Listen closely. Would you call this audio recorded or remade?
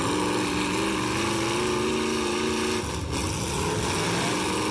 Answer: recorded